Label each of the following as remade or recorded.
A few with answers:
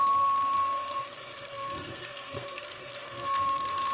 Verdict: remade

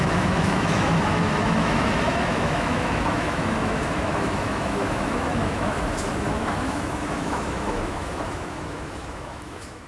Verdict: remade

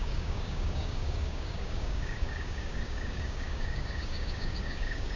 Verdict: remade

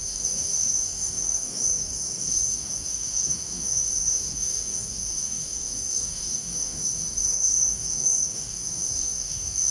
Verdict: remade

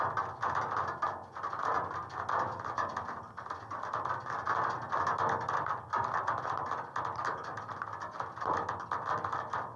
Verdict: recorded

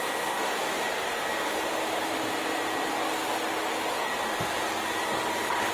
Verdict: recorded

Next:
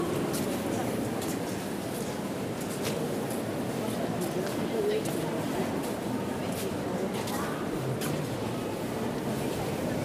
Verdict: recorded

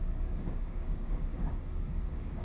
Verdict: remade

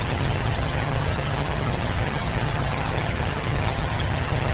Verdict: remade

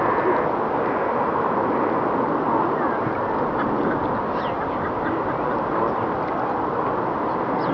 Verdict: recorded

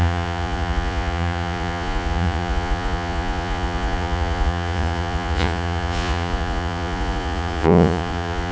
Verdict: remade